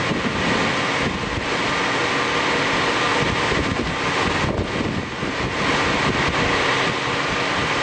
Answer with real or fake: real